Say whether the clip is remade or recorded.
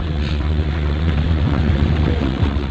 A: remade